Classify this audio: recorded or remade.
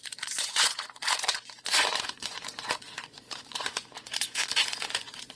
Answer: remade